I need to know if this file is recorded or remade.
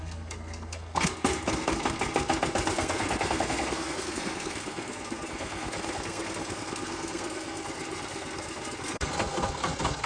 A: remade